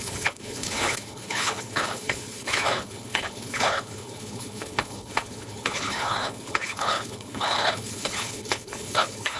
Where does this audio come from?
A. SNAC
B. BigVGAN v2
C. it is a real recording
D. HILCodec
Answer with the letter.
D